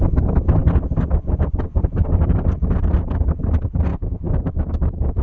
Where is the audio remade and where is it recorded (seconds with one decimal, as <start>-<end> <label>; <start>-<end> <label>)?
0.0-3.9 recorded; 3.9-5.2 remade